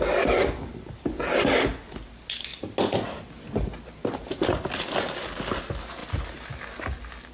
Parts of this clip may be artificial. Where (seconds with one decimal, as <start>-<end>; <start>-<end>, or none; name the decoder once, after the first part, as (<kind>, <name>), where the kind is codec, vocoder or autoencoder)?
none